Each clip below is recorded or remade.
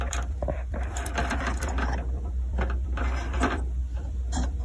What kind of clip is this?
remade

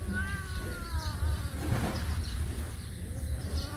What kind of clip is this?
remade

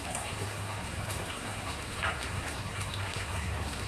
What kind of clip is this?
remade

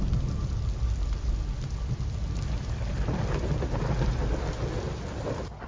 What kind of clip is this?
recorded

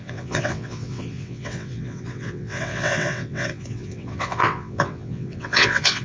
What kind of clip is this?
remade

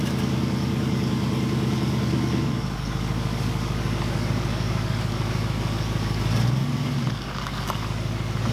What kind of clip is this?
remade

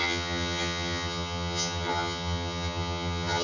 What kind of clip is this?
remade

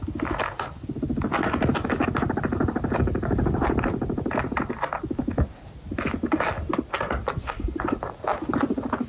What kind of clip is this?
recorded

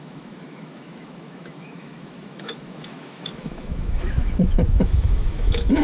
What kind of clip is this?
remade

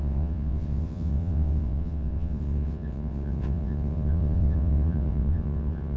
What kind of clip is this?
remade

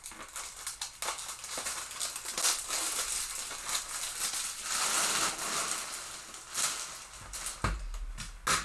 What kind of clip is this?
recorded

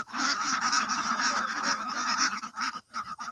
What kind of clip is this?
remade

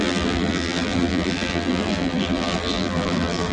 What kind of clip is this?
remade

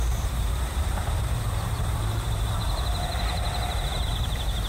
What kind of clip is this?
remade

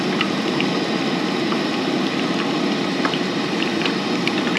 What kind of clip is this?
recorded